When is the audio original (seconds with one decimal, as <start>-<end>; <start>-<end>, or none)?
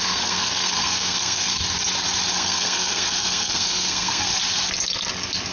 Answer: 1.6-2.3; 4.3-5.5